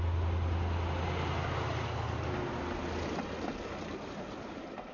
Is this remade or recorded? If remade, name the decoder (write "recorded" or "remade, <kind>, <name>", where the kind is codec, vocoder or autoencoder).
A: recorded